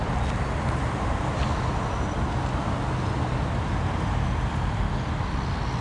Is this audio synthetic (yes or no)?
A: no